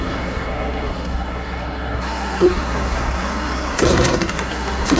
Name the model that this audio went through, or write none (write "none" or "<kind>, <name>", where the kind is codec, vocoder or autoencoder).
codec, SNAC